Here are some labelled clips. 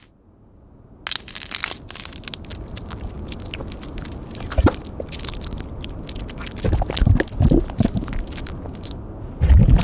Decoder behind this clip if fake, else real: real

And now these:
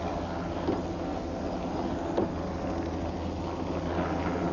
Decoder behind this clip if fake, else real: real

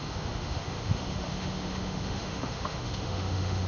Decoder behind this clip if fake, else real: fake, autoencoder, DAC-VAE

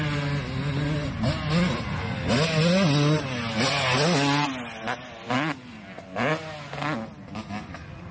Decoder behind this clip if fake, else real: real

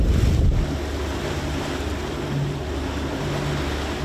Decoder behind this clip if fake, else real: real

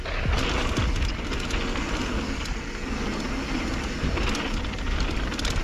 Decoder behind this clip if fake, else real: real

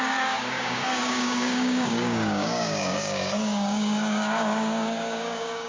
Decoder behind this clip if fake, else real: fake, codec, DAC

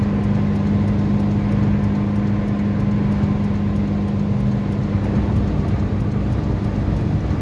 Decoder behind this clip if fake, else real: real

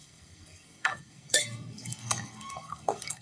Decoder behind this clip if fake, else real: fake, codec, SNAC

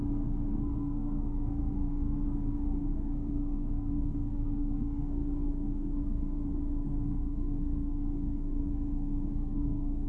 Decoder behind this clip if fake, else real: fake, codec, SNAC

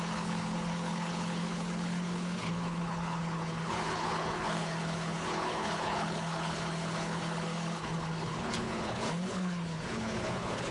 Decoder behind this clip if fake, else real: fake, codec, HILCodec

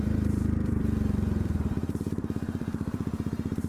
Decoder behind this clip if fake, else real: fake, vocoder, BigVGAN v2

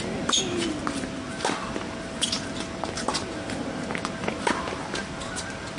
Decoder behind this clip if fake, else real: real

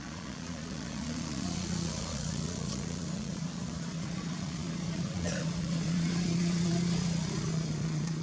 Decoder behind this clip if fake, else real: fake, vocoder, Vocos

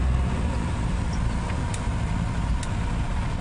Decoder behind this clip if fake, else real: real